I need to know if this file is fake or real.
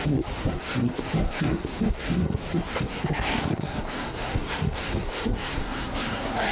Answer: fake